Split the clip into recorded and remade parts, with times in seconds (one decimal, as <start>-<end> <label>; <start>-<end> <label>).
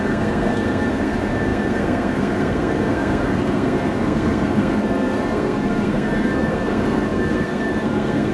0.0-8.3 remade